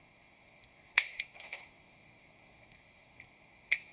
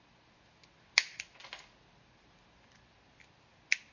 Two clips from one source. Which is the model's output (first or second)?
first